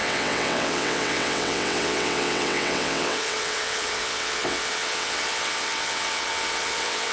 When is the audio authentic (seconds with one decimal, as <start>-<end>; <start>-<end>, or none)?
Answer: none